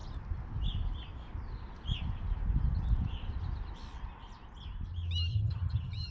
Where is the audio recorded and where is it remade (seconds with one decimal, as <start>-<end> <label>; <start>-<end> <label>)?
0.0-5.3 recorded; 5.3-6.1 remade